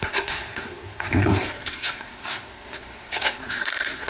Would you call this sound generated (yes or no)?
yes